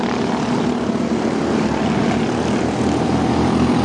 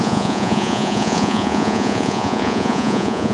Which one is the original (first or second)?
first